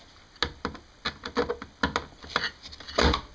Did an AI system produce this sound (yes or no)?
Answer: no